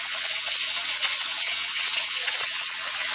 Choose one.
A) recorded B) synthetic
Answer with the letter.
B